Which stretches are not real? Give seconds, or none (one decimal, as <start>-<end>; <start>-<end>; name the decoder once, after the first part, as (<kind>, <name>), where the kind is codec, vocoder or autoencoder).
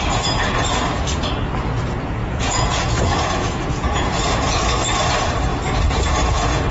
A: 2.2-4.1 (vocoder, Vocos)